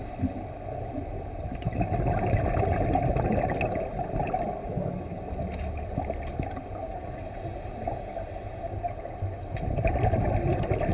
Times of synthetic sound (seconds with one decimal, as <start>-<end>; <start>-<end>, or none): 4.6-5.2